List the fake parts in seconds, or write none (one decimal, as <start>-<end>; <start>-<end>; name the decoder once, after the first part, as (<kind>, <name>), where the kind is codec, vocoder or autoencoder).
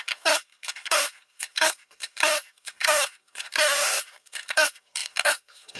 0.0-5.8 (codec, SNAC)